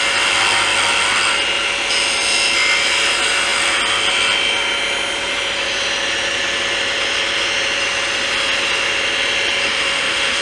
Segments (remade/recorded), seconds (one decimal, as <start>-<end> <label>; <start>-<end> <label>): 0.0-9.6 recorded; 9.6-10.4 remade